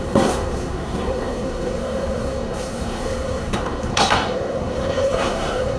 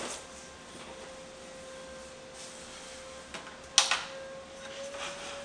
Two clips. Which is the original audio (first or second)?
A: second